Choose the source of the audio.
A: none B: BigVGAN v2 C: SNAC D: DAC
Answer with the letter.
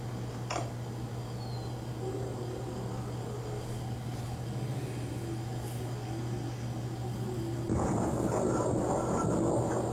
A